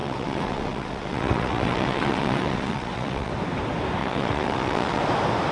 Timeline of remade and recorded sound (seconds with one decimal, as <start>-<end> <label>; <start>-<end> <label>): 0.0-3.3 remade; 3.3-4.0 recorded; 4.0-5.0 remade; 5.0-5.5 recorded